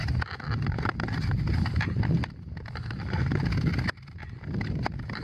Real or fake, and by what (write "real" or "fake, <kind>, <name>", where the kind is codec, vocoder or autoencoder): real